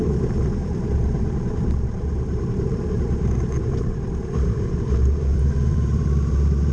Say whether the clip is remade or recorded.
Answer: remade